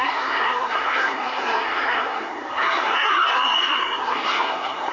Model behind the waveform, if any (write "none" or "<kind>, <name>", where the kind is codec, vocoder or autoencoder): codec, SNAC